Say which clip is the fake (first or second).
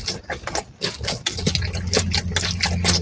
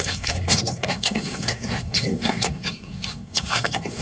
second